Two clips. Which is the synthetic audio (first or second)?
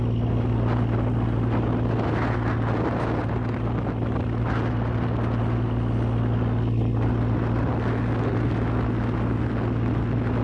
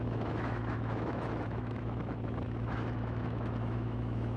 second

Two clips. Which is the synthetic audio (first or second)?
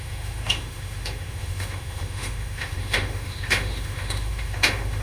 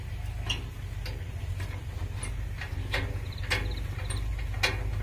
first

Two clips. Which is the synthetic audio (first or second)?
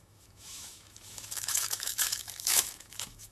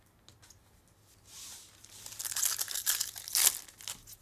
first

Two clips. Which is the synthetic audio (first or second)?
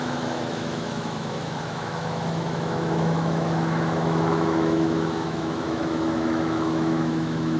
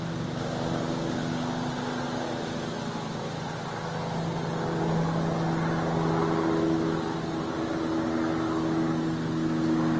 first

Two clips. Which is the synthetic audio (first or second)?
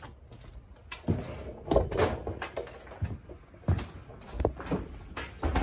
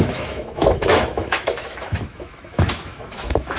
second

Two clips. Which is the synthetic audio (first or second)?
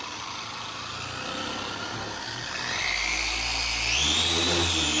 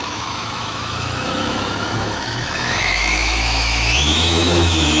second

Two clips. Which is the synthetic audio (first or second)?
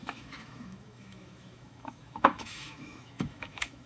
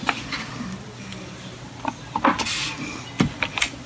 first